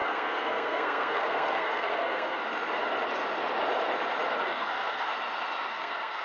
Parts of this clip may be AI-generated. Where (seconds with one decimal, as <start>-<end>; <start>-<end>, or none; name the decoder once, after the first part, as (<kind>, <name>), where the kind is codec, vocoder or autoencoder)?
0.0-2.4 (codec, SNAC); 4.4-5.1; 5.7-6.2